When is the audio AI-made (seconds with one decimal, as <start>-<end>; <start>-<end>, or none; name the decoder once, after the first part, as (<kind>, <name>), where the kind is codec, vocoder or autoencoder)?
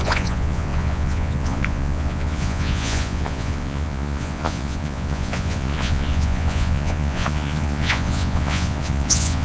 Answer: 0.0-9.4 (vocoder, Vocos)